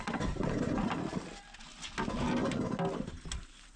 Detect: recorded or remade recorded